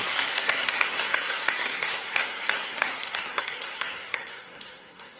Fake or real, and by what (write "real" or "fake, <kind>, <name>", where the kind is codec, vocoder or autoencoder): fake, codec, SNAC